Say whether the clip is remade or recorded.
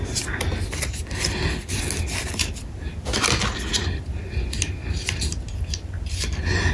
recorded